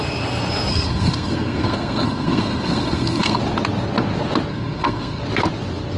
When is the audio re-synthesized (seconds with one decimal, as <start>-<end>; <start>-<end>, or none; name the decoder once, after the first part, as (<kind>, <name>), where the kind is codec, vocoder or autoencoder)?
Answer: 0.7-3.4 (codec, SNAC); 4.5-5.2